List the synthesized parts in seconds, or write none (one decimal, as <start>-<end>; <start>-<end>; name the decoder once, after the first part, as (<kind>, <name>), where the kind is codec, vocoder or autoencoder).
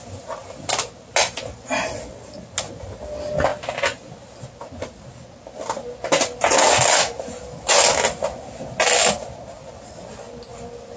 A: none